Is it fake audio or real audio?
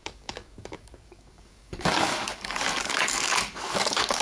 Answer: fake